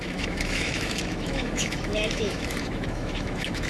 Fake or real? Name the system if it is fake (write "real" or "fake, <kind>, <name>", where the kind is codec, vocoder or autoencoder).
fake, autoencoder, DAC-VAE